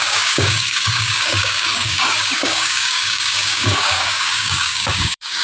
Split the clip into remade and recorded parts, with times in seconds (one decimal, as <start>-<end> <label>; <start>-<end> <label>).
0.0-5.4 remade